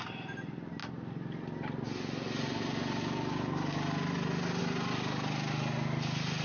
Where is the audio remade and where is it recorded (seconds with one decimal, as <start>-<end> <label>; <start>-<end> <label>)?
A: 0.0-6.4 recorded